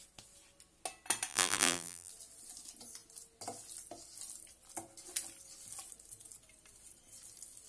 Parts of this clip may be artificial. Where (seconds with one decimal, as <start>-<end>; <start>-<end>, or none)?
1.3-2.1